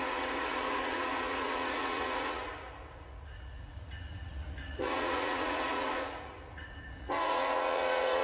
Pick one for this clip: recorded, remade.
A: remade